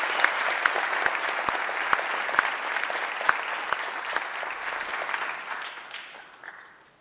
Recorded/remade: recorded